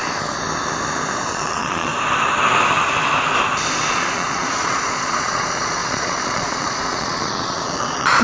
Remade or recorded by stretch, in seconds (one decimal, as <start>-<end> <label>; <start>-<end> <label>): 0.0-1.3 recorded; 1.3-1.9 remade; 1.9-3.9 recorded; 3.9-8.2 remade